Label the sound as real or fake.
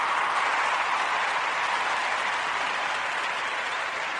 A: real